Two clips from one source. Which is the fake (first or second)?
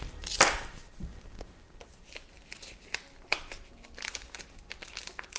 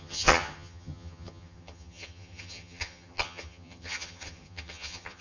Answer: second